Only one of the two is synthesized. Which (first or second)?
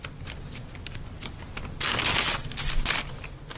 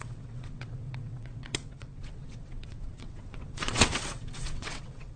second